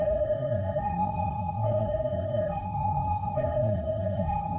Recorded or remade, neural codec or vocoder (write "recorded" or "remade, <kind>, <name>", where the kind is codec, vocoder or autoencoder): remade, codec, SNAC